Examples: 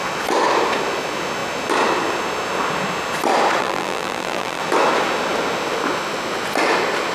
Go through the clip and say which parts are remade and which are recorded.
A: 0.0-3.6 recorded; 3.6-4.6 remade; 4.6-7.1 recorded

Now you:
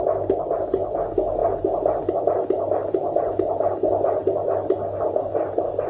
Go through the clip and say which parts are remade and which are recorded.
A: 0.0-5.9 recorded